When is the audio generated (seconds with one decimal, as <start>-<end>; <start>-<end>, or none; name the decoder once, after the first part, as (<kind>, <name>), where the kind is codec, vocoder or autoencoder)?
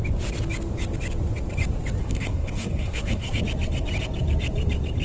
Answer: 2.0-3.4 (codec, SNAC)